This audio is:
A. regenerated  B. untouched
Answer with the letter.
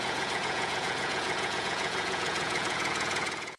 A